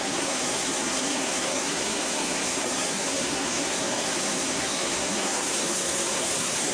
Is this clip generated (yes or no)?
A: yes